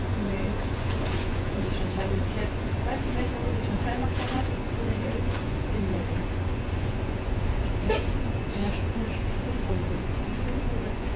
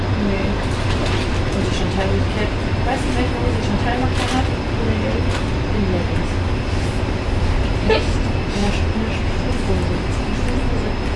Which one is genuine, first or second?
second